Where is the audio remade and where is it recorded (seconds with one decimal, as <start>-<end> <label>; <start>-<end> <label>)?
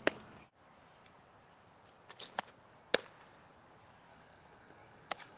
0.0-4.1 recorded; 4.1-5.4 remade